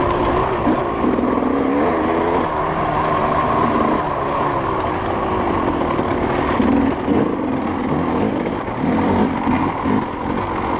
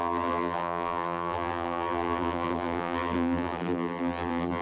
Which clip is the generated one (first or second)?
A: second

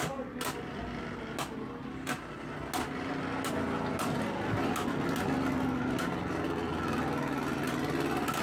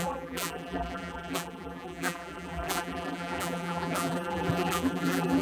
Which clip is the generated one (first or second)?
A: second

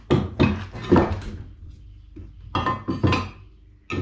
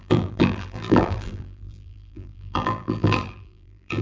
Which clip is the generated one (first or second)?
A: second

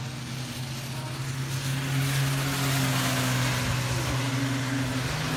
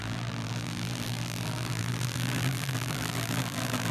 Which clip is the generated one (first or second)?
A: second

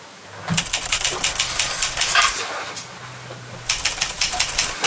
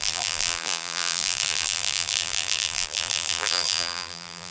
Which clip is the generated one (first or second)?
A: second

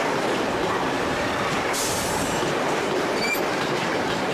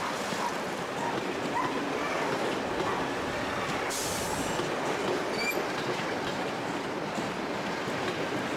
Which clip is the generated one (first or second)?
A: first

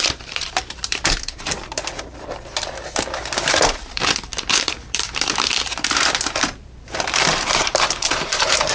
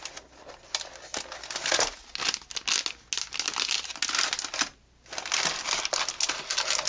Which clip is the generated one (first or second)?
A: first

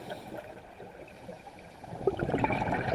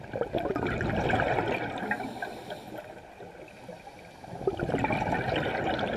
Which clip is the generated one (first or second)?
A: first